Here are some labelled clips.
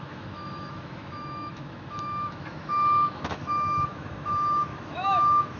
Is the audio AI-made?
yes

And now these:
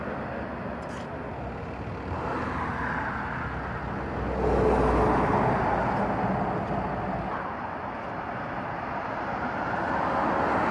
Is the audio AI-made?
no